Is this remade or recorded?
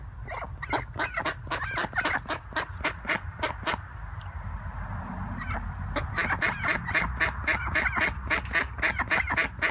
recorded